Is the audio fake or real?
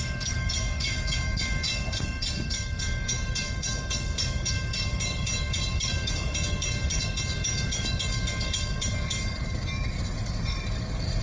fake